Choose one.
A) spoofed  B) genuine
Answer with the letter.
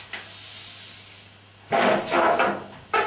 B